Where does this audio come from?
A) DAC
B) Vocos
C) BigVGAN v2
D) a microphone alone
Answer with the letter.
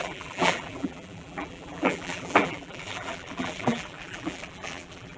C